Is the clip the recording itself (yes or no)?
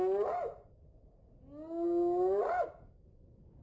yes